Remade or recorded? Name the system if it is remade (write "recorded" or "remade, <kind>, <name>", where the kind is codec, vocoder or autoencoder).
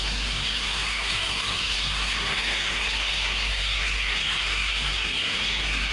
remade, codec, SNAC